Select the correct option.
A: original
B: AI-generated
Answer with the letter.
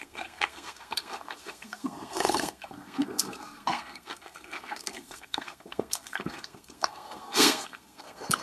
B